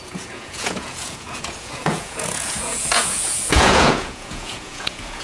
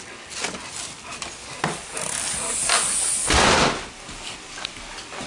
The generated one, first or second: first